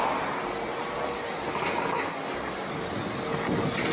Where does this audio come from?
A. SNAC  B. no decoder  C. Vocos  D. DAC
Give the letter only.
B